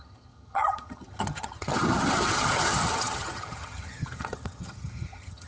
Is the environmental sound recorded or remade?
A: remade